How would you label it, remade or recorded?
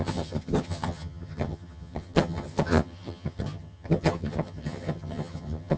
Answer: remade